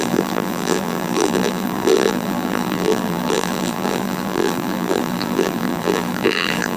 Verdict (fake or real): fake